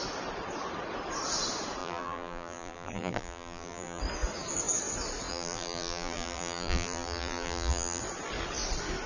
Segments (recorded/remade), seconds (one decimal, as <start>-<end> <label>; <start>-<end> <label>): 0.0-1.8 recorded; 1.8-4.0 remade; 4.0-5.3 recorded; 5.3-8.0 remade; 8.0-9.1 recorded